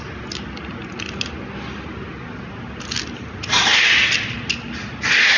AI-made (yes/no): no